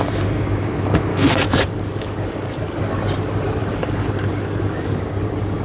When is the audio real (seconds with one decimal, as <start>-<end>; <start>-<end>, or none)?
0.0-1.1; 2.8-3.6; 5.0-5.6